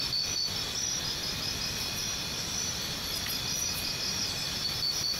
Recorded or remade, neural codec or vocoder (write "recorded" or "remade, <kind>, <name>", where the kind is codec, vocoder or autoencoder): recorded